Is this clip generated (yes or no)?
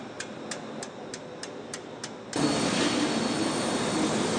no